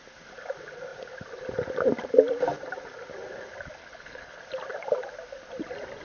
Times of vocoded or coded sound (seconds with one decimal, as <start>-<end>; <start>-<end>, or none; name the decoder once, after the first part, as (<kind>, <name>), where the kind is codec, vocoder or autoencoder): 3.8-4.4 (codec, HILCodec)